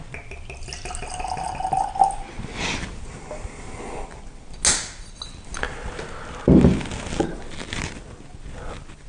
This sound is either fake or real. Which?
real